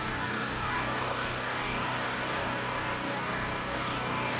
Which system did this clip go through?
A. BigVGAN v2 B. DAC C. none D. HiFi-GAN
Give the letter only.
B